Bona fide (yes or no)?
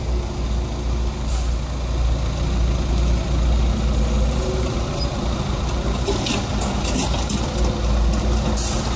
yes